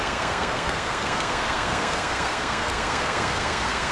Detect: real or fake fake